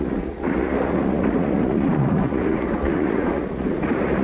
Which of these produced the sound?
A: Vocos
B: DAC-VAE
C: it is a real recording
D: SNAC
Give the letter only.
A